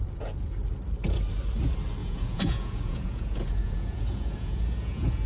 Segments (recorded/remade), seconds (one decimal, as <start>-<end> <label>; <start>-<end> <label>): 0.0-2.0 recorded; 2.0-5.3 remade